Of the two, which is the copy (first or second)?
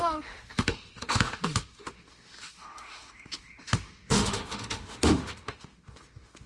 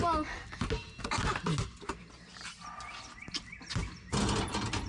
first